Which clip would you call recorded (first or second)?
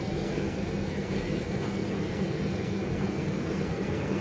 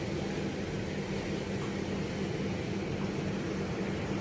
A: second